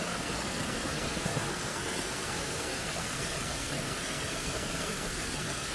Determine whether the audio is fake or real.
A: fake